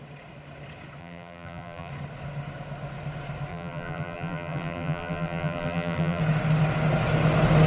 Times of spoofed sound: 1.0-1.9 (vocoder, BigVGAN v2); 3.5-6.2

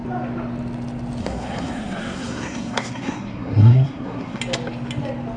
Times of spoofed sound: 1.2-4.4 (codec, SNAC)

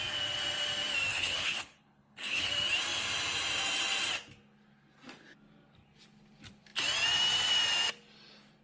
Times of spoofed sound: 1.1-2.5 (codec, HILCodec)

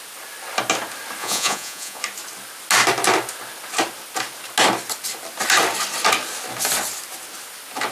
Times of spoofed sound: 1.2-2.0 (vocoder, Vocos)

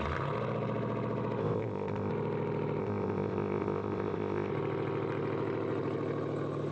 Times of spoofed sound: 1.4-2.1 (codec, ZipCodec); 2.8-4.5

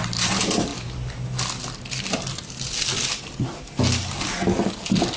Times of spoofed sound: none

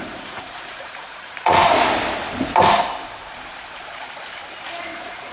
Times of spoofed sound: 0.0-1.6 (vocoder, Vocos); 4.8-5.3

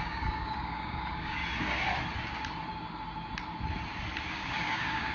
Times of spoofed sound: 0.0-1.4 (codec, DAC); 4.3-5.1